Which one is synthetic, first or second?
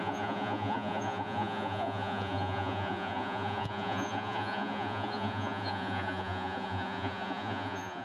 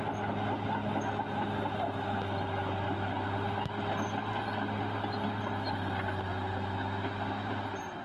first